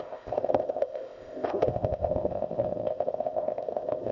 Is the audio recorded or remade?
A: remade